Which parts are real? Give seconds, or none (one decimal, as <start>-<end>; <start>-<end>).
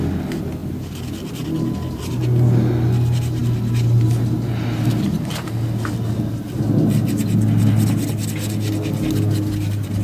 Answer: 0.0-10.0